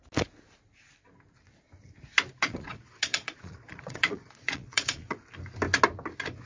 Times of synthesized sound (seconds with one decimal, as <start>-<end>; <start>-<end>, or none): 2.4-5.2